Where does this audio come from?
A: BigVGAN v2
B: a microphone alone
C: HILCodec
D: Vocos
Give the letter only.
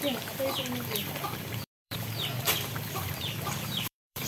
A